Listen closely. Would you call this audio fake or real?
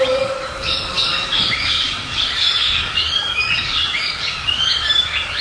fake